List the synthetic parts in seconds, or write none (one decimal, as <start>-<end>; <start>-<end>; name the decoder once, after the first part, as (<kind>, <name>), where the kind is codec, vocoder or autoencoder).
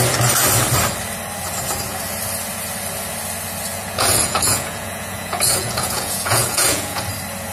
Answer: 3.7-7.0 (vocoder, Vocos)